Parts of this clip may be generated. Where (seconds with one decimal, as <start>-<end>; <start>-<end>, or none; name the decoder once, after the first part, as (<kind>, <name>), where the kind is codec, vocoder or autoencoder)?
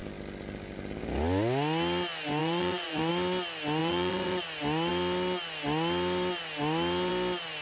2.4-3.1 (vocoder, Vocos); 3.8-4.4